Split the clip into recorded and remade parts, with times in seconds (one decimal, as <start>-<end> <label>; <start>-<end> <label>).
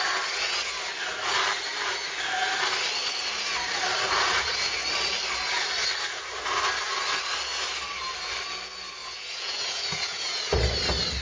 0.0-9.0 recorded; 9.0-10.5 remade; 10.5-11.2 recorded